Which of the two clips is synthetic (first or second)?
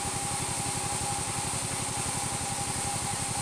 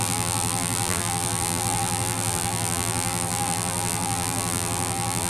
second